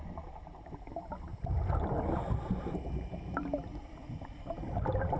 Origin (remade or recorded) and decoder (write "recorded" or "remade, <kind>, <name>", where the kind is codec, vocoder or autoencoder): remade, vocoder, BigVGAN v2